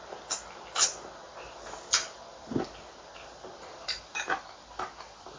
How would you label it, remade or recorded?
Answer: recorded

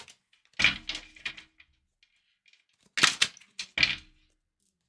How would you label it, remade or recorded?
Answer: recorded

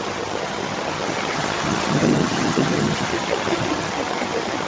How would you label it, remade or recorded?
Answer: remade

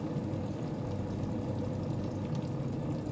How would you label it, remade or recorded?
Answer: recorded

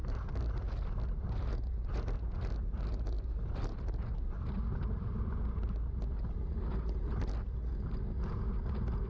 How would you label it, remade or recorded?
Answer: recorded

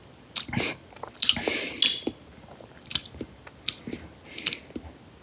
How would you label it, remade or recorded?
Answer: recorded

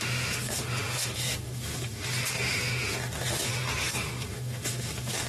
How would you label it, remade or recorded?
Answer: remade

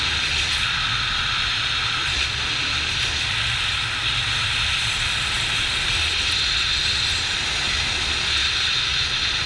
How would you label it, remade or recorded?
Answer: recorded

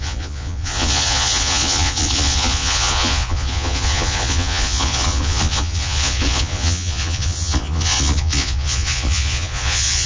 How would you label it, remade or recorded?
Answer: remade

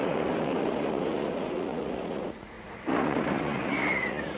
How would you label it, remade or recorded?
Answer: remade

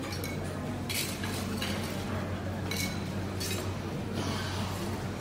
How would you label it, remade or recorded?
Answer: recorded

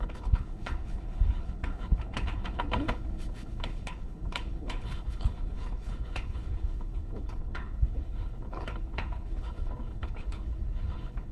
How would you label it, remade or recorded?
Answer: remade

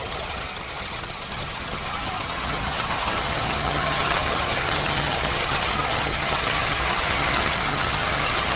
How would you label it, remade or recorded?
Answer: remade